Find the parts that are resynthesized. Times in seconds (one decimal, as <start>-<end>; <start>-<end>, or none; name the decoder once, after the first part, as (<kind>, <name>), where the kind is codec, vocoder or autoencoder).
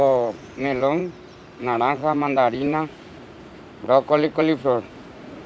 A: 0.0-1.0 (vocoder, Vocos); 1.6-5.5